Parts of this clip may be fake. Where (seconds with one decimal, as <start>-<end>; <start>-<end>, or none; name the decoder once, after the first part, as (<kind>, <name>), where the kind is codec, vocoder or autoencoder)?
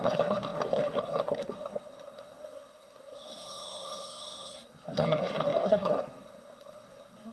0.0-7.3 (codec, SNAC)